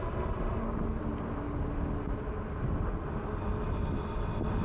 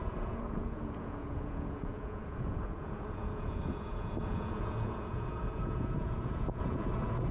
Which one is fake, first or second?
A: second